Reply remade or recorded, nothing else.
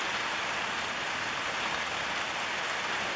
recorded